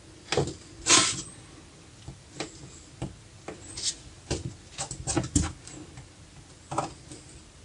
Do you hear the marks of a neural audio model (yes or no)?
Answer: no